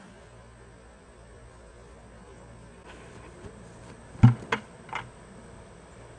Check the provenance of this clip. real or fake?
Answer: real